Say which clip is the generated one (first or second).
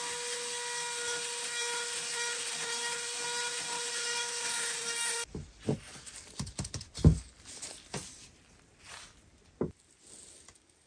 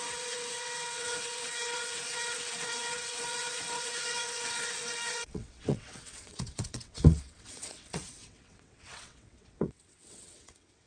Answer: second